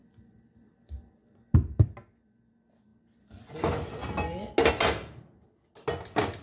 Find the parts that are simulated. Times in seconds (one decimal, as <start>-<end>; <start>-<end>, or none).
none